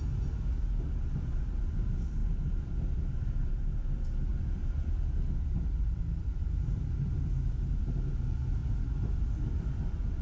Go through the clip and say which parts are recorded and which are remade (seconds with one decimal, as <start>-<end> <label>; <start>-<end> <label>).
0.0-2.2 recorded; 2.2-3.3 remade; 3.3-4.3 recorded; 4.3-7.8 remade; 7.8-8.6 recorded; 8.6-9.6 remade; 9.6-10.2 recorded